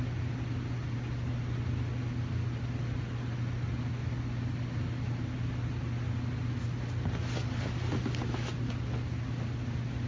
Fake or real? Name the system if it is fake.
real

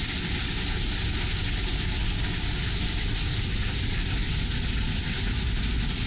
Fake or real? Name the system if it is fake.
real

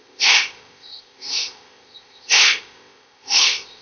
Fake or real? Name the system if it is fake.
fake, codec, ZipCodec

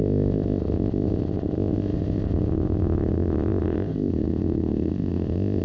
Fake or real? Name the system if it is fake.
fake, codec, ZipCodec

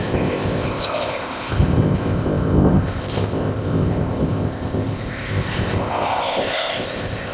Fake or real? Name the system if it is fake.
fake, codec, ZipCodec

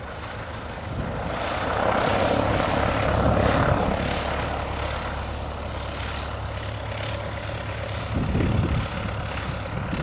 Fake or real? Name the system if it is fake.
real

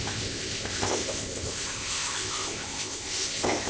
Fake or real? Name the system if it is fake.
fake, codec, ZipCodec